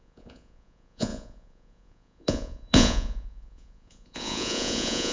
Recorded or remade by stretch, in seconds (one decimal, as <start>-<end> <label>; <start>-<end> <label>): 0.0-5.1 remade

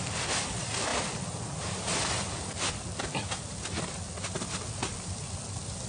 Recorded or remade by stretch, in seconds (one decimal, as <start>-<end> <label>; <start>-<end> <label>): 0.0-5.9 recorded

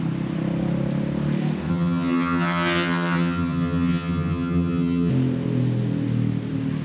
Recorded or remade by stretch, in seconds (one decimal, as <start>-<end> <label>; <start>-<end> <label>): 0.0-1.7 recorded; 1.7-5.1 remade; 5.1-6.8 recorded

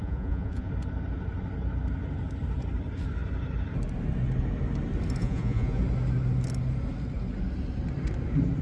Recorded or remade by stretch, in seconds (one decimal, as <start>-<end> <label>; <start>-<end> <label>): 0.0-0.7 remade; 0.7-5.2 recorded; 5.2-5.8 remade; 5.8-8.6 recorded

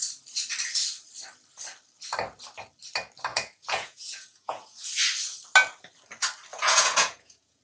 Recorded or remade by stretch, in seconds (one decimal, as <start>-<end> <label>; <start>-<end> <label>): 0.0-3.3 recorded; 3.3-4.9 remade; 4.9-6.5 recorded; 6.5-7.6 remade